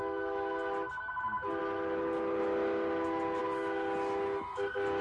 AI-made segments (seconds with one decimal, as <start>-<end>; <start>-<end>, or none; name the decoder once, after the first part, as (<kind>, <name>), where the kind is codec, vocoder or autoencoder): none